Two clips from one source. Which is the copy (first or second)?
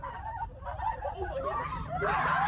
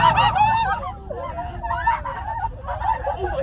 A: first